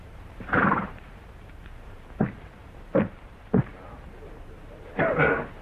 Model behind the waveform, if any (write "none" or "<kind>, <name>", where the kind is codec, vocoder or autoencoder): vocoder, BigVGAN v2